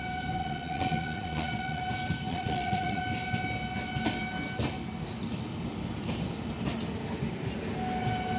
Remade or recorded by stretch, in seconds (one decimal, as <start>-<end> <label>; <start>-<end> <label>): 0.0-0.4 recorded; 0.4-1.8 remade; 1.8-2.3 recorded; 2.3-3.0 remade; 3.0-8.4 recorded